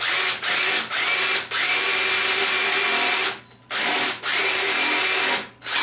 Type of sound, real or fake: real